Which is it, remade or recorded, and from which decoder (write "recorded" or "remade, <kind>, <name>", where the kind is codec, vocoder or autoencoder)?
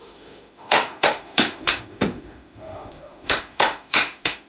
remade, autoencoder, DAC-VAE